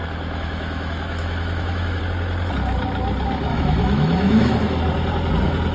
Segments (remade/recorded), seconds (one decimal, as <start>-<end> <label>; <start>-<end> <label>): 0.0-2.0 remade; 2.0-3.5 recorded; 3.5-4.8 remade; 4.8-5.7 recorded